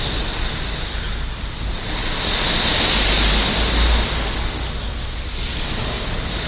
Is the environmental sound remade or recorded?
recorded